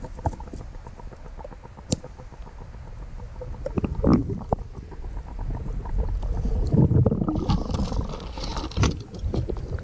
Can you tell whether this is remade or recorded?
recorded